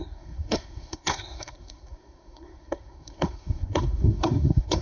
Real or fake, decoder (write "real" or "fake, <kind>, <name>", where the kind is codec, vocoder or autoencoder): fake, codec, SNAC